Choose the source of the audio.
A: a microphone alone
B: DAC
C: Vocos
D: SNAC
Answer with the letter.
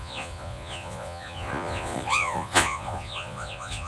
C